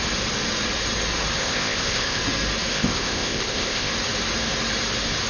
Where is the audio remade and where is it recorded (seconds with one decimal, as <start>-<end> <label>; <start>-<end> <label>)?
0.0-1.4 recorded; 1.4-2.2 remade; 2.2-2.7 recorded; 2.7-3.9 remade; 3.9-5.3 recorded